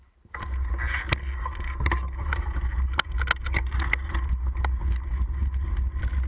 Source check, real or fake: real